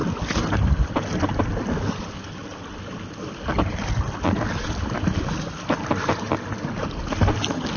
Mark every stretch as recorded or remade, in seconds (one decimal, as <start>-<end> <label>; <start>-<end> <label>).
0.0-7.8 recorded